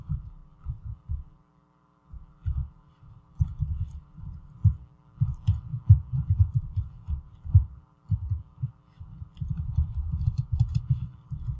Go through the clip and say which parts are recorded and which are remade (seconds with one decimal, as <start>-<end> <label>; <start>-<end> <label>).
0.0-4.6 remade; 4.6-6.4 recorded; 6.4-11.6 remade